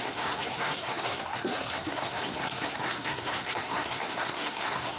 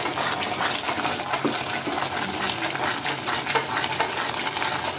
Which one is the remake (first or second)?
first